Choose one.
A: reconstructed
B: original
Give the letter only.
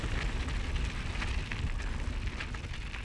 B